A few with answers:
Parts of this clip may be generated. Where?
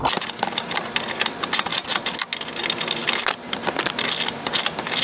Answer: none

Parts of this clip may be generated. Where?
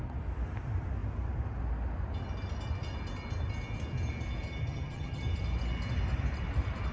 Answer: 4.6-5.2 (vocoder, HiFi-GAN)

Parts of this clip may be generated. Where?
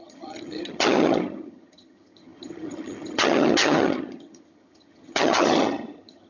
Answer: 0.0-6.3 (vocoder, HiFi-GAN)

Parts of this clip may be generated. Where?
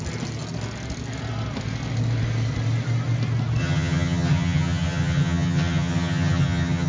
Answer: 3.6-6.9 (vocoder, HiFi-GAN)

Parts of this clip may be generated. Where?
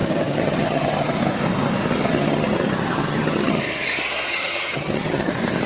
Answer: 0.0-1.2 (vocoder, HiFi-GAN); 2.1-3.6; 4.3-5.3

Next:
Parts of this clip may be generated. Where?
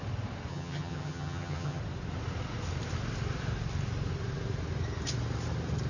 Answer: 0.5-1.8 (vocoder, HiFi-GAN)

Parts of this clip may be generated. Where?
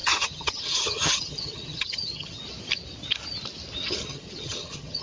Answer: 0.0-2.4 (vocoder, HiFi-GAN); 3.9-5.0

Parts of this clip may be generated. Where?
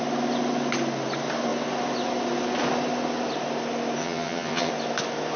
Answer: 4.0-4.7 (vocoder, HiFi-GAN)